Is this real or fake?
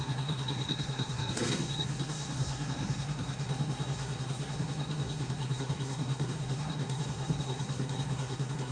fake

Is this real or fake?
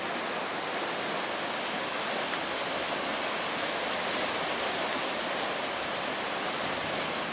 real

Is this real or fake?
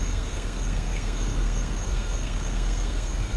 fake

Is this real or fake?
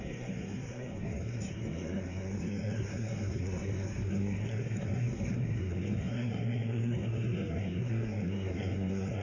fake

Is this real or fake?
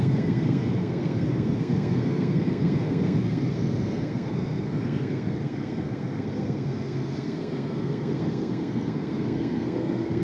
fake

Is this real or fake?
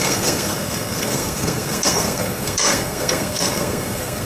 fake